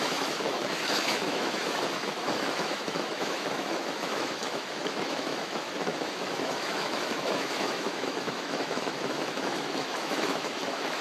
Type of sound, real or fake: fake